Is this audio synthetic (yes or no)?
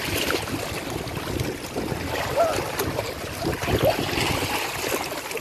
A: no